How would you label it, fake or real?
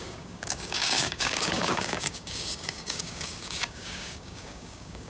fake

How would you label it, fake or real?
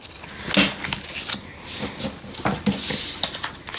real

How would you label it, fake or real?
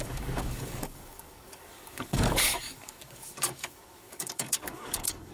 fake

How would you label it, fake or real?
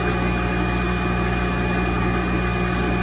real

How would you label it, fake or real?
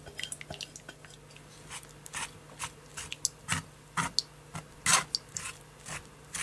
real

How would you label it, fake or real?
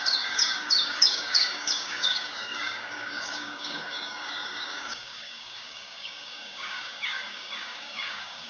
fake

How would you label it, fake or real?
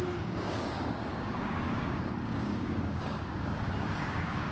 fake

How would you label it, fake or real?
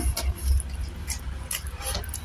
real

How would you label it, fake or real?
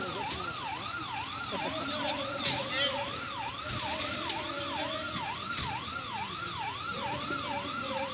real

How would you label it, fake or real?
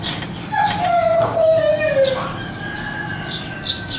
real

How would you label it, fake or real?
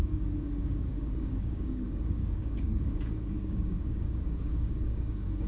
fake